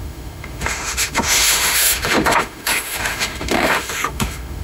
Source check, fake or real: fake